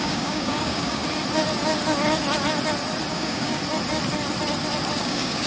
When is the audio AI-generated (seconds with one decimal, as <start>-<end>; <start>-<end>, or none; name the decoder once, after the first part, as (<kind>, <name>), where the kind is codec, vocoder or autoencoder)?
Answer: 0.0-1.0 (codec, DAC); 3.1-3.6; 5.0-5.5